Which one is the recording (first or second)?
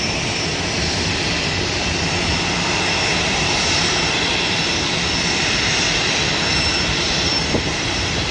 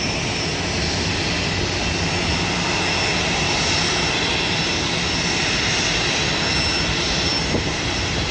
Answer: second